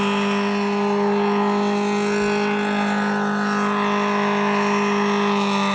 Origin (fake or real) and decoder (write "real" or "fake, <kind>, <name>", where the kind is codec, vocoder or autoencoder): real